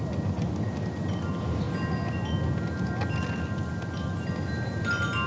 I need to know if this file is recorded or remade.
recorded